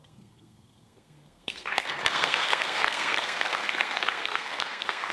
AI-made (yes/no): yes